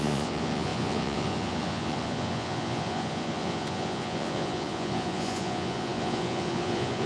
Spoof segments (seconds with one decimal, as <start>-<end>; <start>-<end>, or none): 0.0-7.1